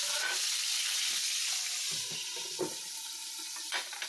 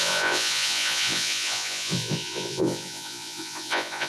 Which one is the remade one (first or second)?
second